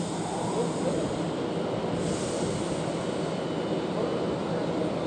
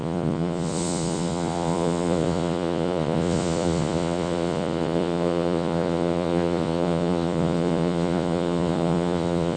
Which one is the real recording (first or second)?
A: first